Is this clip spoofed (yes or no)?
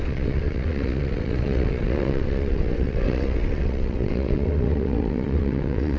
yes